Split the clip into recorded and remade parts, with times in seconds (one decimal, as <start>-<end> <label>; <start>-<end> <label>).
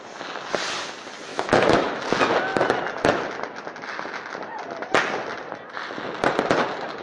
0.0-1.3 recorded; 1.3-2.0 remade; 2.0-7.0 recorded